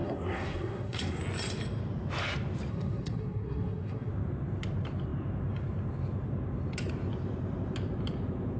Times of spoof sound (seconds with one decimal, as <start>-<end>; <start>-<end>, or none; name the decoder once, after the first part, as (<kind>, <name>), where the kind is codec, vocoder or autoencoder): 0.0-1.2 (codec, SNAC); 2.7-4.1